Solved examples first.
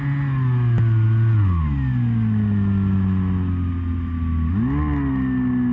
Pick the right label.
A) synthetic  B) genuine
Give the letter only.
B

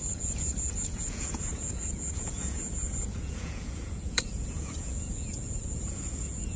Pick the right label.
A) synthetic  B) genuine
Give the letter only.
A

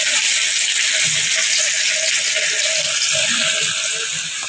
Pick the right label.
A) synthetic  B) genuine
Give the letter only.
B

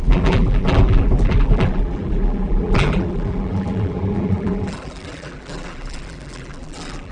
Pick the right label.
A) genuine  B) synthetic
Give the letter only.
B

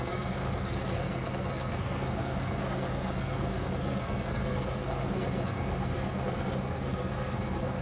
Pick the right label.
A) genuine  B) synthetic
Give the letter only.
B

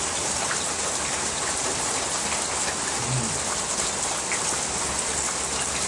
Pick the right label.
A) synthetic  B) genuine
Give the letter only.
B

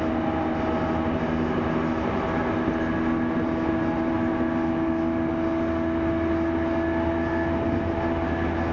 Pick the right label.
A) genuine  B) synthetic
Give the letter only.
A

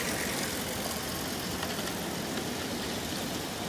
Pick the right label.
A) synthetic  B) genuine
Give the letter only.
B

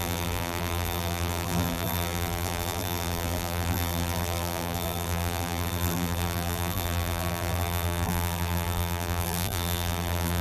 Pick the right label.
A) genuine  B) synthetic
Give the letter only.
B